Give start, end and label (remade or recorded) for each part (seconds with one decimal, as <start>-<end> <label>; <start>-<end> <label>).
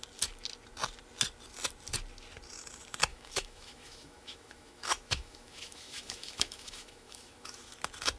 0.0-3.1 recorded; 3.1-7.7 remade; 7.7-8.2 recorded